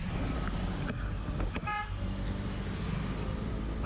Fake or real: real